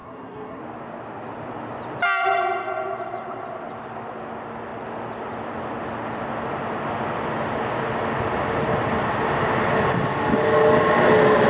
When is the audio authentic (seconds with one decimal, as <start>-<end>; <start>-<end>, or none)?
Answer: 0.6-11.5